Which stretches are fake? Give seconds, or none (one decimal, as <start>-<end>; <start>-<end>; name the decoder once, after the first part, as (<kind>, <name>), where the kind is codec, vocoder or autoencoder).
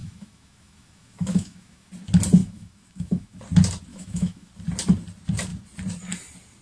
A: 0.0-1.9 (autoencoder, DAC-VAE); 2.4-3.4; 3.9-4.5